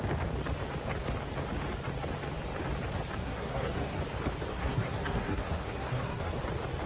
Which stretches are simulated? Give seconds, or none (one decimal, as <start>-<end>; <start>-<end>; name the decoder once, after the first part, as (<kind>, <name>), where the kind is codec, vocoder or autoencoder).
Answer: 3.2-4.0 (codec, SNAC); 4.5-6.3